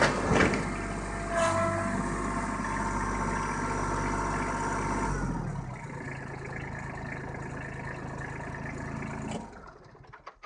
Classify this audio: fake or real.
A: real